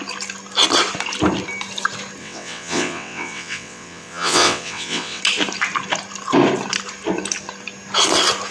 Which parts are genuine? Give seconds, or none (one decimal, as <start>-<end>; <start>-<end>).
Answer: 0.0-2.2; 5.2-8.5